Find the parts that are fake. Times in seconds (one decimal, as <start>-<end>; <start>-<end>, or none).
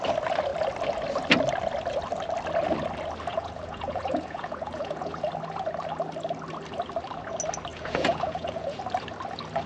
3.3-5.3; 7.7-8.8